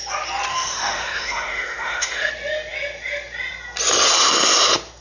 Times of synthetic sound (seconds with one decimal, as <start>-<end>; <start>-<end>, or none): 0.5-2.3